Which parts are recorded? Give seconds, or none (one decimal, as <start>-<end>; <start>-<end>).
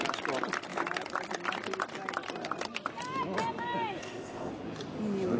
0.0-4.0; 4.5-5.4